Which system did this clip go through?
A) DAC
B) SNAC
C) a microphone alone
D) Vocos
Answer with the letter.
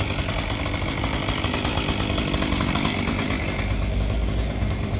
C